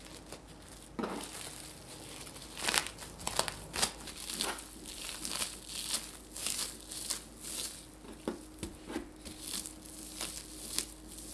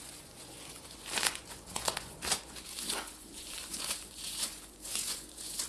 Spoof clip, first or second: second